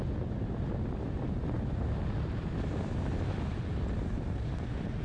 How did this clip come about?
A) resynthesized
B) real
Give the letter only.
B